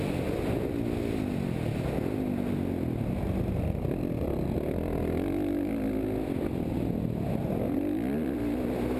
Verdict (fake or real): real